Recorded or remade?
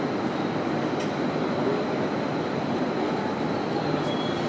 recorded